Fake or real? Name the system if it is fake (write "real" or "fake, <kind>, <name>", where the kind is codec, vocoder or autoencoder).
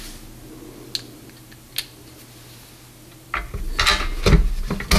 real